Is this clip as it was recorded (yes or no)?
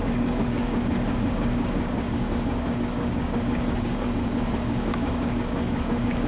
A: no